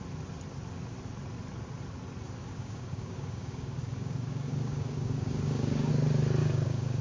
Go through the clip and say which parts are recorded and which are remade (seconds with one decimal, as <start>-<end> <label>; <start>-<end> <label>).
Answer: 0.0-2.4 recorded; 2.4-5.9 remade; 5.9-6.4 recorded; 6.4-7.0 remade